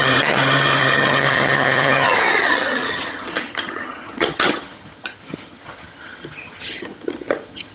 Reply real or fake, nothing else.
fake